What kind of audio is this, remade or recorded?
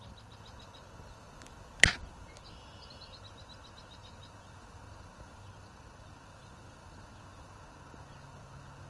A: recorded